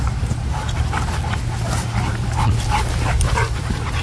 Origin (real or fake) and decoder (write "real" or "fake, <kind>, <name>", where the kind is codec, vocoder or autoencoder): real